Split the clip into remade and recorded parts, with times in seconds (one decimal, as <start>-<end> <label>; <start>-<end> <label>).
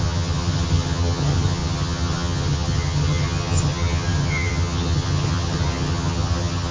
0.0-6.7 remade